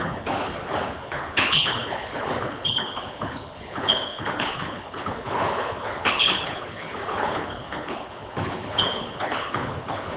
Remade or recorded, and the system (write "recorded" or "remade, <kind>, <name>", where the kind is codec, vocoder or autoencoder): remade, codec, HILCodec